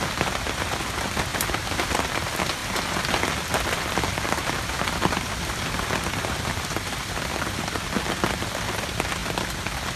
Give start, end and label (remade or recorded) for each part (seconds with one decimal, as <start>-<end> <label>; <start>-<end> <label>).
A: 0.0-1.3 recorded; 1.3-1.9 remade; 1.9-10.0 recorded